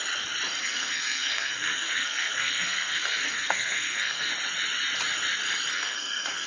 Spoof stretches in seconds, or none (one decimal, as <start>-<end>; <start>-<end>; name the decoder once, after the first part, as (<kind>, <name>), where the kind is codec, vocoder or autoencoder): 0.6-4.3 (codec, SNAC); 5.7-6.5